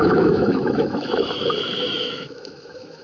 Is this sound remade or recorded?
remade